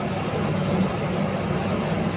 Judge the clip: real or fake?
real